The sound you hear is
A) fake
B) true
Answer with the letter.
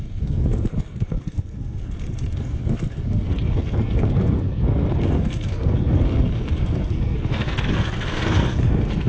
A